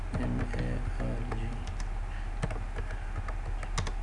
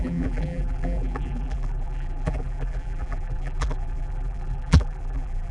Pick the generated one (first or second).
second